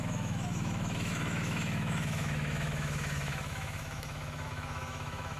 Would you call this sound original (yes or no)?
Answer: no